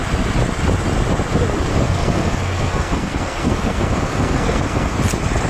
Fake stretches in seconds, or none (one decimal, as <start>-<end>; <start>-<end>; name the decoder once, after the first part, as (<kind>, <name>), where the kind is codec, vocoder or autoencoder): 1.7-5.0 (codec, SNAC)